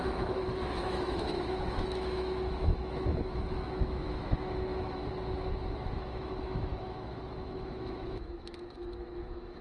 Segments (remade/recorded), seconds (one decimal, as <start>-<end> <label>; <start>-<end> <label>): 0.0-5.0 remade; 5.0-6.0 recorded; 6.0-9.6 remade